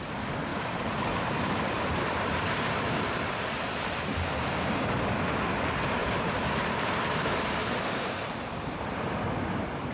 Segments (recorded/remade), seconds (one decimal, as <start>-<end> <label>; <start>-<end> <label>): 0.0-0.5 recorded; 0.5-3.1 remade; 3.1-6.0 recorded; 6.0-7.6 remade; 7.6-9.9 recorded